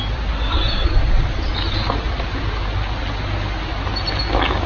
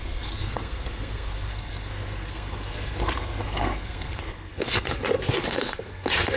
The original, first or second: first